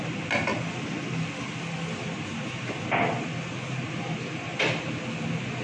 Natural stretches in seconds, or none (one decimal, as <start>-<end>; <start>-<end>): 0.0-5.6